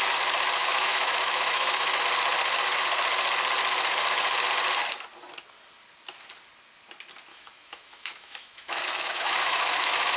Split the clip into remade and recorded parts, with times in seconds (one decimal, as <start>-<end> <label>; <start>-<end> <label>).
0.0-0.6 recorded; 0.6-2.0 remade; 2.0-7.3 recorded; 7.3-10.2 remade